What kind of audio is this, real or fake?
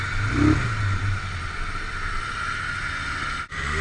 real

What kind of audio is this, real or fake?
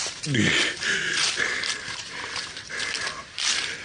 real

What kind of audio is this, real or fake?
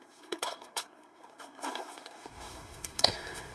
fake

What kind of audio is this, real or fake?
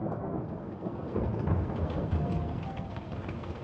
fake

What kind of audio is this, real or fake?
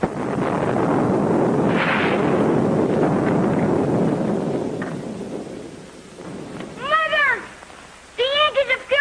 real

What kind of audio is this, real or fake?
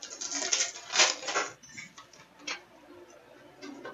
real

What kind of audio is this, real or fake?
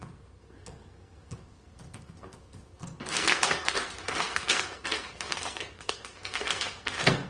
fake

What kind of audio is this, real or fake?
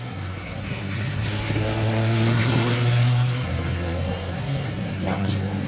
fake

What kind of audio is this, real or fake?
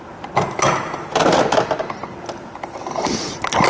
real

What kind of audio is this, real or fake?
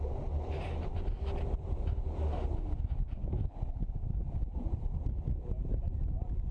real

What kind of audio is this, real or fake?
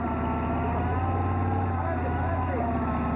real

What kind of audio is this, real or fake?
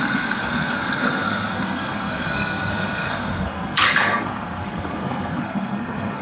fake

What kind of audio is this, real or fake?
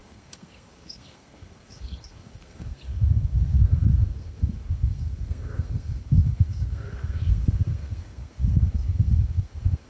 fake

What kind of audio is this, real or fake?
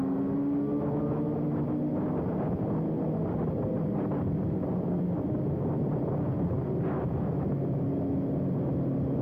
real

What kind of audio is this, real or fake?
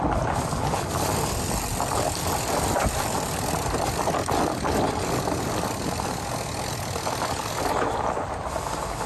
real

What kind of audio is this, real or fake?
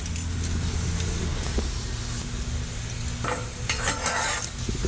real